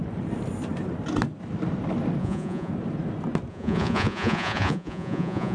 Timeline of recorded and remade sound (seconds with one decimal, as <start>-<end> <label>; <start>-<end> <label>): 0.0-2.2 recorded; 2.2-2.7 remade; 2.7-3.5 recorded; 3.5-5.5 remade